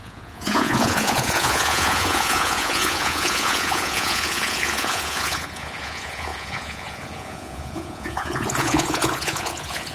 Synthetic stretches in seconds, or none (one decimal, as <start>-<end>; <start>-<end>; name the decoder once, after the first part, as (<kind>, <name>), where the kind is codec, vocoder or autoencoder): 0.0-9.9 (vocoder, Vocos)